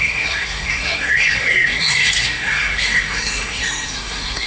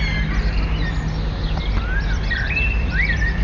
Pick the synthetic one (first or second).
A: first